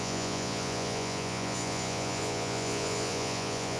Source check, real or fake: fake